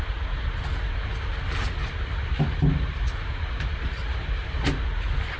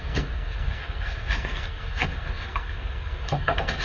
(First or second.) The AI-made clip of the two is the second